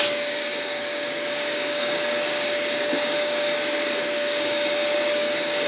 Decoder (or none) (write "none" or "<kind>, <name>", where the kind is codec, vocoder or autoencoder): codec, DAC